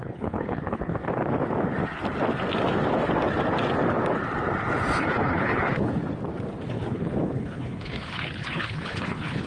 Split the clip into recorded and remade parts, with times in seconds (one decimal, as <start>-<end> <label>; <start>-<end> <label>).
0.0-0.9 remade; 0.9-5.0 recorded; 5.0-6.0 remade; 6.0-6.7 recorded; 6.7-9.5 remade